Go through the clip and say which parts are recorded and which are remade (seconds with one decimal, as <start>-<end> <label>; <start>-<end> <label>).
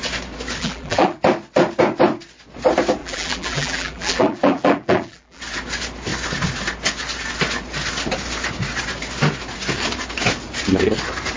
0.0-0.6 recorded; 0.6-1.2 remade; 1.2-3.0 recorded; 3.0-5.4 remade; 5.4-11.4 recorded